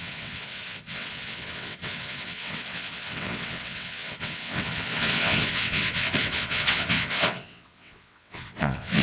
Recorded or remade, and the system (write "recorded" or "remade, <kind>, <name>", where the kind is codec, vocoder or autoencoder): remade, vocoder, WaveNeXt